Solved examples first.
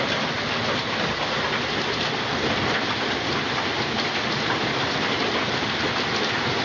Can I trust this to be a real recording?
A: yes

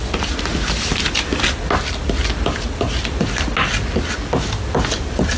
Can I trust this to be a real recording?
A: yes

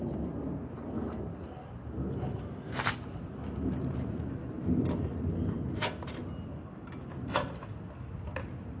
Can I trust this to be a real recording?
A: yes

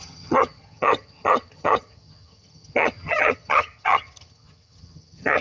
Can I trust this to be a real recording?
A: no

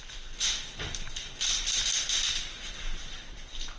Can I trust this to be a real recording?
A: yes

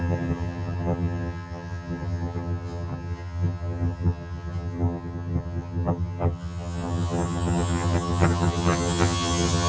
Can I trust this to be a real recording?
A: no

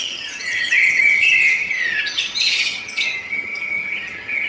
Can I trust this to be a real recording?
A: no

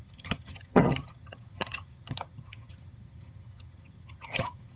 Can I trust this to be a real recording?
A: no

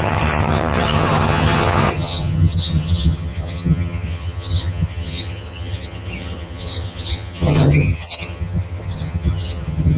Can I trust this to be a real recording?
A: no